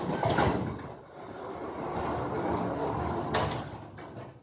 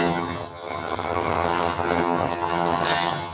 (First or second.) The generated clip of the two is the second